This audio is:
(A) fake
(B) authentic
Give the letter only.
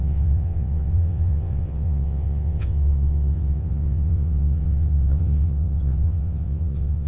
A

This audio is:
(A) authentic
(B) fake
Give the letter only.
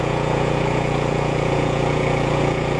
B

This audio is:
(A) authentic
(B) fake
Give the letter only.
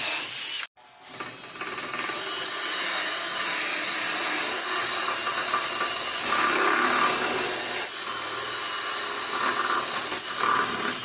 A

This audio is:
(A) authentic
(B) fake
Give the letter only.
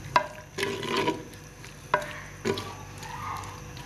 A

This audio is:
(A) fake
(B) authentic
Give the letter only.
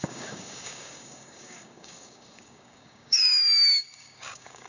A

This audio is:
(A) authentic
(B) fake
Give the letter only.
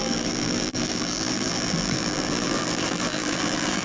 B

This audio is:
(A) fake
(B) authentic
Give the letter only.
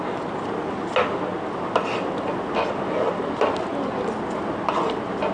B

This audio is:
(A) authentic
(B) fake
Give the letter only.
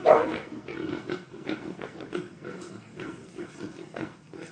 B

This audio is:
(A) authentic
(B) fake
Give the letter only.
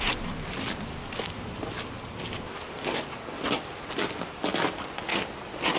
A